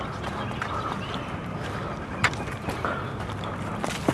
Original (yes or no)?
yes